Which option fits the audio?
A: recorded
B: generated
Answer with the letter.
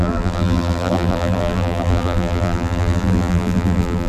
B